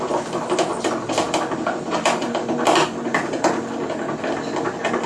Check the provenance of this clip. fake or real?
fake